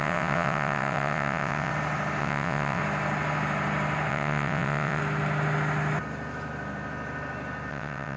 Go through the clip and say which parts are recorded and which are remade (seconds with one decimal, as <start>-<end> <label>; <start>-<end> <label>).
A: 0.0-1.7 remade; 1.7-2.2 recorded; 2.2-2.8 remade; 2.8-4.1 recorded; 4.1-5.0 remade; 5.0-7.7 recorded; 7.7-8.2 remade